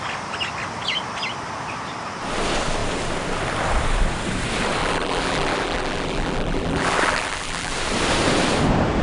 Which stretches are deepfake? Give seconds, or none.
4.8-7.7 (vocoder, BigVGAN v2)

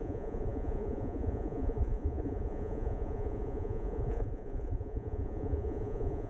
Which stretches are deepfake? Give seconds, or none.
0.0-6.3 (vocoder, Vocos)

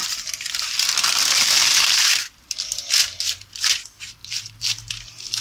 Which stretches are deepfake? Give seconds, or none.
0.0-1.5 (vocoder, BigVGAN v2); 4.2-4.9

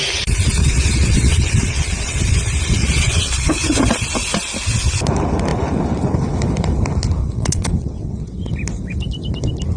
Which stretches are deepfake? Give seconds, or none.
0.6-2.2 (vocoder, WaveNeXt); 2.8-3.8; 7.2-8.5

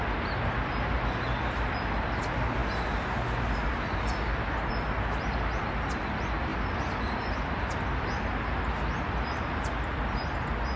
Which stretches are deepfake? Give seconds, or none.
none

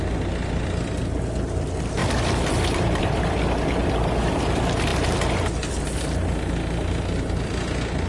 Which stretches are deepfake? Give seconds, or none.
2.0-3.9 (vocoder, BigVGAN v2); 4.9-5.8

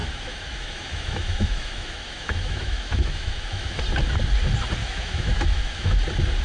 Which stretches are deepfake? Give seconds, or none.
0.0-3.8 (autoencoder, DAC-VAE); 4.8-6.0

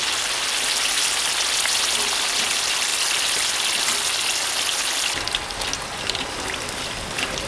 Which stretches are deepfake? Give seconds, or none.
none